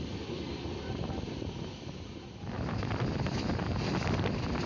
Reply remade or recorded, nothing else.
recorded